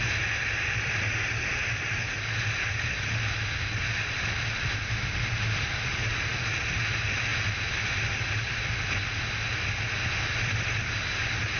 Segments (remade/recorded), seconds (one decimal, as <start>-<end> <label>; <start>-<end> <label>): 0.0-11.6 recorded